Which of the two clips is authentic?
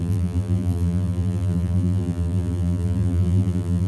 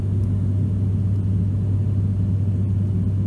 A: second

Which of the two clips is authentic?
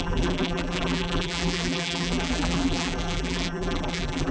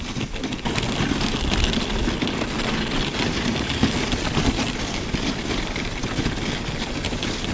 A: second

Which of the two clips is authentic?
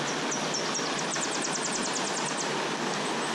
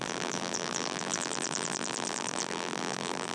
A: first